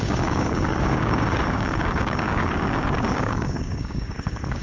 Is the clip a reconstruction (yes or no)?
yes